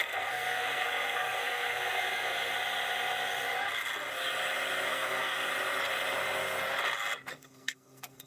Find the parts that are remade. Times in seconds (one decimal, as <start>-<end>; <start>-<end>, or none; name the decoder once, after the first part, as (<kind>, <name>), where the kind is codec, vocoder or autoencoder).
0.0-2.5 (codec, SNAC); 4.9-5.5; 7.3-8.3